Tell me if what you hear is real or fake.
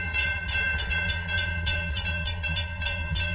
fake